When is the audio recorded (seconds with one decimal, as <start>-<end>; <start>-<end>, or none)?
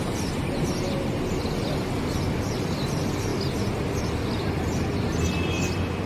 0.0-6.1